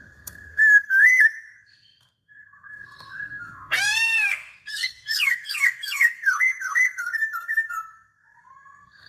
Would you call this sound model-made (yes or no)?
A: yes